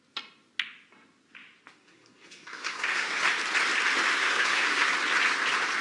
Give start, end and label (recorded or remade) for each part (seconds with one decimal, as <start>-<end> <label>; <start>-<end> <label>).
0.0-1.7 recorded; 1.7-3.2 remade; 3.2-4.1 recorded; 4.1-4.9 remade; 4.9-5.8 recorded